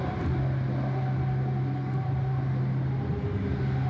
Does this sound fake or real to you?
real